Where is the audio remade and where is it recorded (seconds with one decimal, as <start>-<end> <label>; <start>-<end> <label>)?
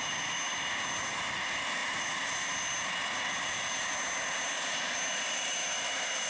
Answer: 0.0-6.3 recorded